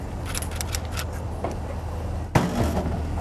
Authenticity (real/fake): real